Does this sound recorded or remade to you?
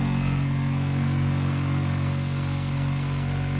remade